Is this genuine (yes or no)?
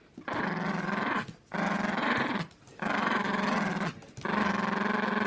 yes